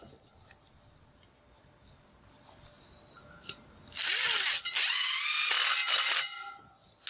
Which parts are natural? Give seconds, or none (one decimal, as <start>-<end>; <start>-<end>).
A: 0.0-4.0; 5.1-7.1